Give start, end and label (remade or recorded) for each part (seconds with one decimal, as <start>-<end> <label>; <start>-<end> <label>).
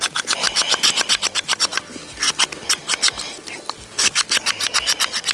0.0-5.3 recorded